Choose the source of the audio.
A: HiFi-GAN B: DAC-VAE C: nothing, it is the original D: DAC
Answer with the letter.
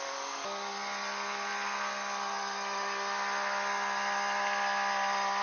C